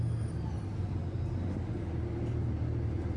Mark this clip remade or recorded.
recorded